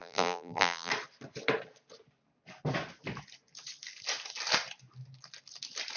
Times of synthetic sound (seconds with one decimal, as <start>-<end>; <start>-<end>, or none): 0.0-0.9